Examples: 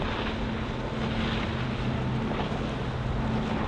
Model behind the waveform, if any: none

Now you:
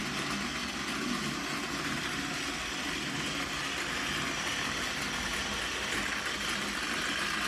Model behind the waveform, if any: none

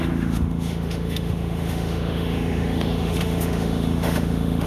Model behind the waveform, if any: autoencoder, DAC-VAE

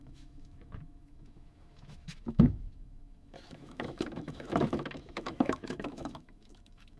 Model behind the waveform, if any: autoencoder, DAC-VAE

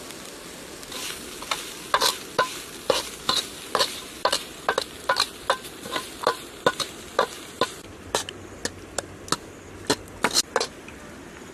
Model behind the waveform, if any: none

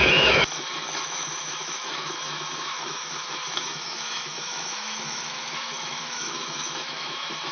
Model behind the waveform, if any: autoencoder, DAC-VAE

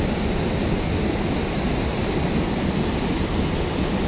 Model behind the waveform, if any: none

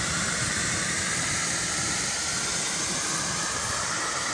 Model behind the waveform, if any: none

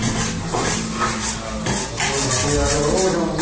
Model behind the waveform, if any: none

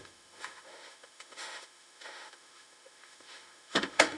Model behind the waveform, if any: autoencoder, DAC-VAE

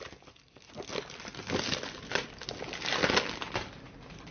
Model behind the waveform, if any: none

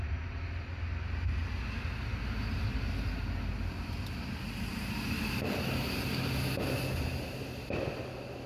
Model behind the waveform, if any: none